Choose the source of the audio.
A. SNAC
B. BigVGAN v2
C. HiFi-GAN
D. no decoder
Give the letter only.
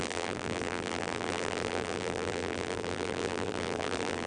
B